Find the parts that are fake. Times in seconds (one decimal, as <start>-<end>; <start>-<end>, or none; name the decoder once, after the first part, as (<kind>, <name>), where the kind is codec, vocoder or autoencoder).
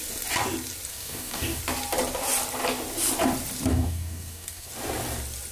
0.9-1.6 (codec, DAC); 3.7-4.7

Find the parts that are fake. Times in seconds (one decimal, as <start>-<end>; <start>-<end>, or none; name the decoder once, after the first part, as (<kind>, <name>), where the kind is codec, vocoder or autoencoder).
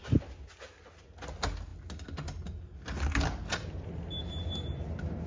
none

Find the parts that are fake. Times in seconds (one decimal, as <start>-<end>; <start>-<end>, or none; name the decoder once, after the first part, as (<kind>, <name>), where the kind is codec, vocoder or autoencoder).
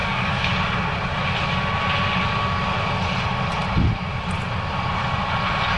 0.0-0.5 (codec, DAC)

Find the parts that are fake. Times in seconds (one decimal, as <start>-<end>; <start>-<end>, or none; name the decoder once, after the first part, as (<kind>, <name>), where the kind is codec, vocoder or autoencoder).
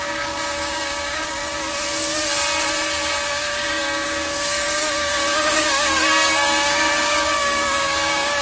0.0-1.4 (codec, DAC); 3.3-8.4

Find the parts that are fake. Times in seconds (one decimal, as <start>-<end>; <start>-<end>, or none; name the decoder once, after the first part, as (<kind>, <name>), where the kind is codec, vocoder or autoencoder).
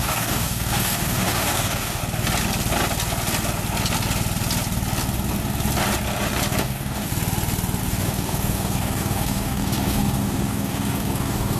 0.0-2.0 (codec, DAC); 6.6-7.1; 7.8-11.6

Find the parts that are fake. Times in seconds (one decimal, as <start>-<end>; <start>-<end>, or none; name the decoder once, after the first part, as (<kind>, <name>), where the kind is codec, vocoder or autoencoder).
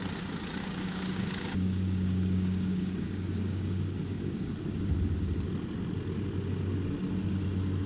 0.6-4.5 (codec, DAC)